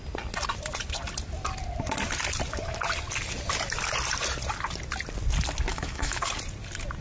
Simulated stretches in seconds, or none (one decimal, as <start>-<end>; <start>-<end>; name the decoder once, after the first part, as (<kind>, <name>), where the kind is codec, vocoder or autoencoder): 5.7-6.3 (autoencoder, DAC-VAE)